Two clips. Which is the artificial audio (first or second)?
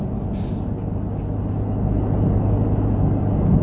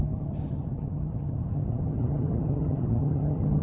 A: second